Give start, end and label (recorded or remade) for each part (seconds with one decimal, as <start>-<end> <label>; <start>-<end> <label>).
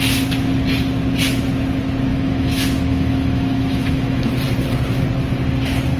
0.0-2.1 recorded; 2.1-4.3 remade; 4.3-6.0 recorded